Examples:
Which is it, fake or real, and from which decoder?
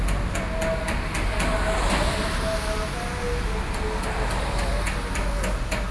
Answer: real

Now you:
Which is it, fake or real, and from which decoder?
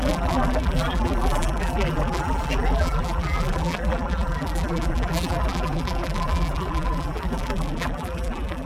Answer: fake, vocoder, BigVGAN v2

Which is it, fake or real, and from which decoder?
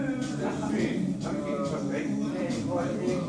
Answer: fake, vocoder, BigVGAN v2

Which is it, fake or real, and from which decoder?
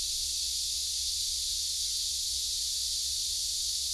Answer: fake, vocoder, BigVGAN v2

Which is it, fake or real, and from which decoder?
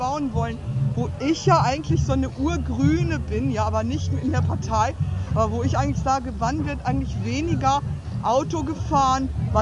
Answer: real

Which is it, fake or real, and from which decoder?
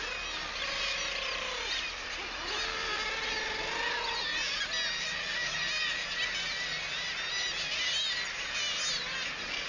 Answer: real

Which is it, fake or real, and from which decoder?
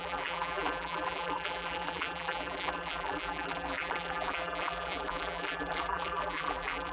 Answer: fake, vocoder, BigVGAN v2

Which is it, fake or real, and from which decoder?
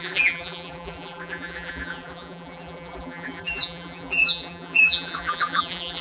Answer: fake, vocoder, BigVGAN v2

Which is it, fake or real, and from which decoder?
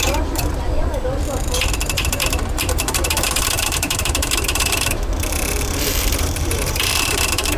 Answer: fake, vocoder, BigVGAN v2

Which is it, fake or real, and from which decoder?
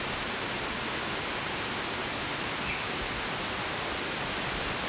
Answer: real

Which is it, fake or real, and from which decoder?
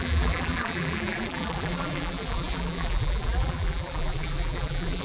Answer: fake, vocoder, BigVGAN v2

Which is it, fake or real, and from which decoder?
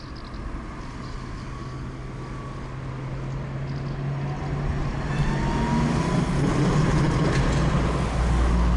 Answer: real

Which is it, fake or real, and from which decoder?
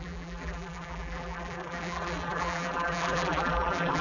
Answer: fake, vocoder, BigVGAN v2